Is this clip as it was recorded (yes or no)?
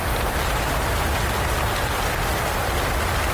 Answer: yes